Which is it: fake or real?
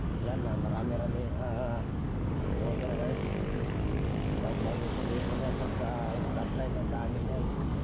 fake